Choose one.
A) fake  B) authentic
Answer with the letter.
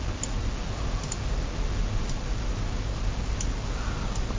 B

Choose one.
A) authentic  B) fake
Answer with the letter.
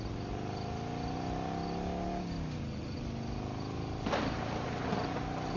A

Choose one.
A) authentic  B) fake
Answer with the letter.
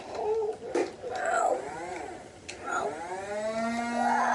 A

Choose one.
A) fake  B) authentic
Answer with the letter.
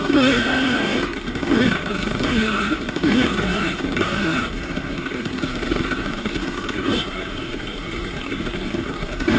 A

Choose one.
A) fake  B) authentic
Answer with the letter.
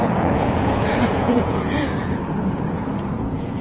A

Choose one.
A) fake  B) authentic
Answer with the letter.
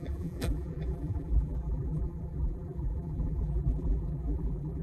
A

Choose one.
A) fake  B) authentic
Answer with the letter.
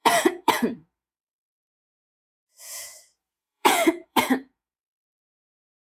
A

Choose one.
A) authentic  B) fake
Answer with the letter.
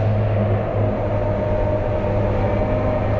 A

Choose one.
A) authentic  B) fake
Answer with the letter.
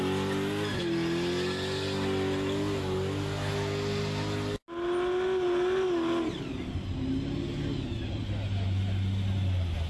A